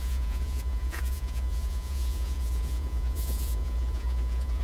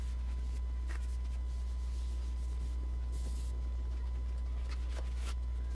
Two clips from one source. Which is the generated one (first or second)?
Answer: first